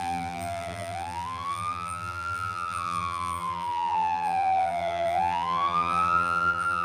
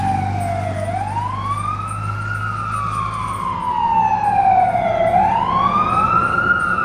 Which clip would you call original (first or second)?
second